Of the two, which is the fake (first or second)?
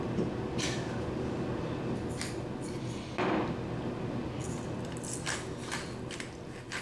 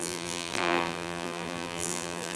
second